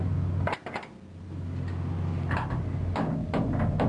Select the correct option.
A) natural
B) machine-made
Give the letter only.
A